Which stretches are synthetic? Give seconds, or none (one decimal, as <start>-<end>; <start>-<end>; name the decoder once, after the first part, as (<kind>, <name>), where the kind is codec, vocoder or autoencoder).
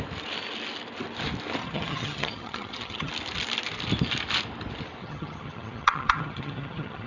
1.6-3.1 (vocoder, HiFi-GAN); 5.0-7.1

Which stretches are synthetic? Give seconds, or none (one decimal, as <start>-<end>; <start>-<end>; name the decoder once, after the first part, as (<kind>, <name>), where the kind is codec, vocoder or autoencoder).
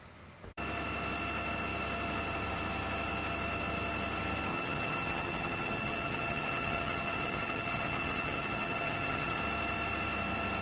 4.5-9.4 (vocoder, HiFi-GAN)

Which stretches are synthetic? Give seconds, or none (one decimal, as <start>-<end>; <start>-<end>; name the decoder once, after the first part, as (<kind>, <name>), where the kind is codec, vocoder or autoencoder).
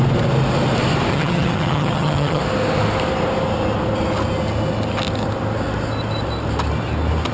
1.1-2.4 (vocoder, HiFi-GAN)